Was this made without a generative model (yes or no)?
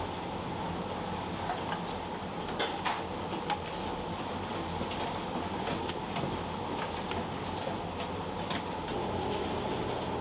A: yes